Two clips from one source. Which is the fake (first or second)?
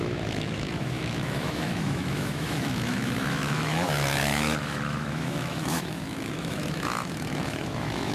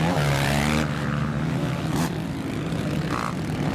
first